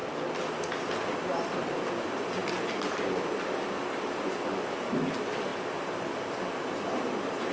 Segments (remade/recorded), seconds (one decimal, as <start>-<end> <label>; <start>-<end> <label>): 0.0-5.5 recorded; 5.5-6.4 remade; 6.4-7.5 recorded

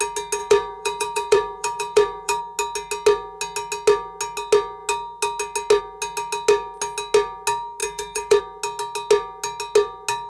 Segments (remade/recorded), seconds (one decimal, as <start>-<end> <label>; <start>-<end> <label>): 0.0-0.4 recorded; 0.4-2.4 remade; 2.4-7.8 recorded; 7.8-8.4 remade; 8.4-10.3 recorded

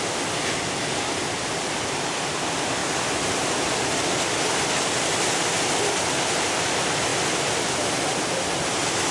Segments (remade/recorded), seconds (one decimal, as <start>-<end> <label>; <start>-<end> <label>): 0.0-2.8 remade; 2.8-3.4 recorded; 3.4-9.1 remade

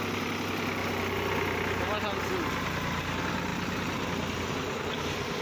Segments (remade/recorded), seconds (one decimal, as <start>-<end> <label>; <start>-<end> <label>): 0.0-5.4 recorded

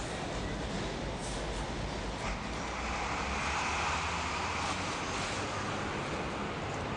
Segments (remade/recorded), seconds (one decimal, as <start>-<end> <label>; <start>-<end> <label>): 0.0-7.0 recorded

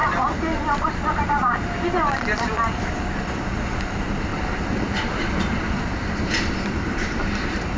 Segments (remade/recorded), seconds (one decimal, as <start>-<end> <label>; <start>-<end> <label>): 0.0-1.7 remade; 1.7-4.3 recorded; 4.3-7.8 remade

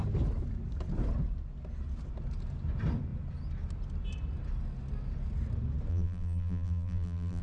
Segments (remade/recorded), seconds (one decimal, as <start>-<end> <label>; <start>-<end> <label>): 0.0-5.9 recorded; 5.9-7.4 remade

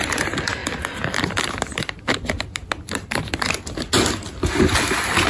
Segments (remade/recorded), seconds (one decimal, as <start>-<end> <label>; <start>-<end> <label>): 0.0-5.3 recorded